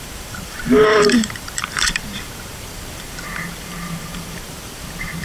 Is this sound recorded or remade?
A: remade